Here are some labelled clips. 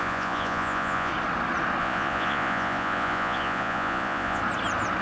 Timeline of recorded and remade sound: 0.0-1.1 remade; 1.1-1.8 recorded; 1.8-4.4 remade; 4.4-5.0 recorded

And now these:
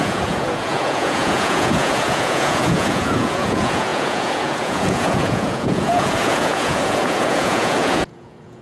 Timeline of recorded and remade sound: 0.0-8.6 remade

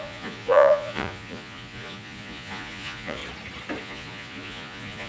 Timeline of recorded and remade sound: 0.0-3.2 remade; 3.2-3.8 recorded; 3.8-5.1 remade

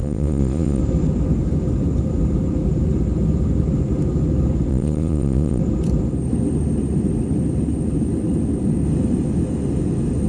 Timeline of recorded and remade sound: 0.0-0.8 remade; 0.8-4.7 recorded; 4.7-5.6 remade; 5.6-10.3 recorded

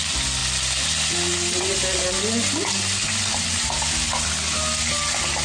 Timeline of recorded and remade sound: 0.0-5.4 recorded